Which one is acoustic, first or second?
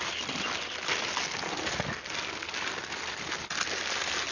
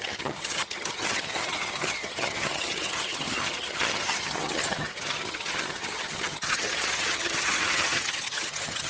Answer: first